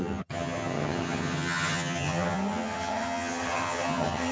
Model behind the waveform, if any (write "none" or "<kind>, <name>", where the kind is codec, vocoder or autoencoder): vocoder, HiFi-GAN